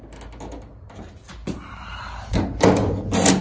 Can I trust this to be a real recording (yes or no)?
yes